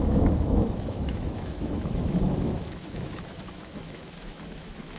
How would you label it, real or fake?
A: fake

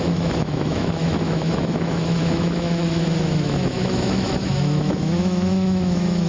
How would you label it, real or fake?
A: fake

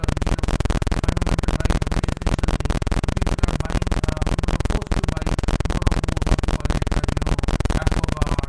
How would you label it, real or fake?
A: real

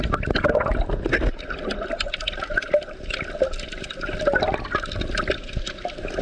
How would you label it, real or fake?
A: real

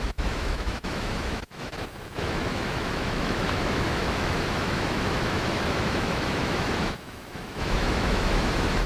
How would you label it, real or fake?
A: fake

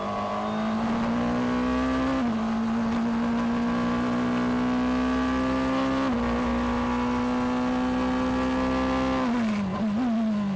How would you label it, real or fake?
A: real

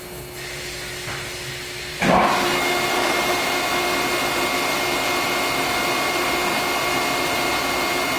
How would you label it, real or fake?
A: real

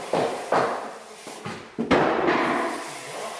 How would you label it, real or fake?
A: real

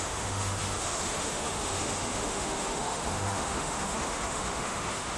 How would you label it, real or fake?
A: fake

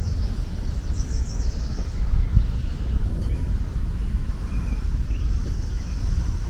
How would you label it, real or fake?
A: fake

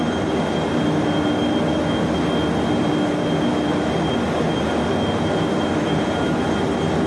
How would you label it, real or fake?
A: real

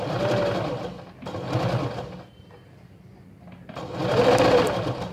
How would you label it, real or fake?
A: real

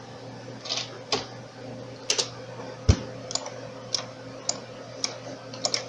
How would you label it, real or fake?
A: real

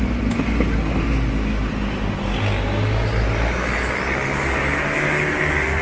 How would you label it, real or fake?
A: real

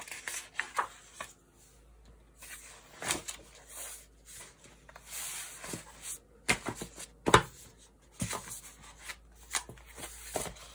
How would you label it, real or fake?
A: real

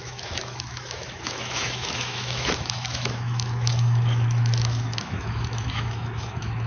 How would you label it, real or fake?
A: fake